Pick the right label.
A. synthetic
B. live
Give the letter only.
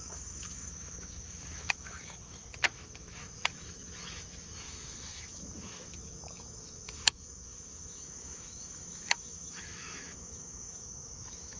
A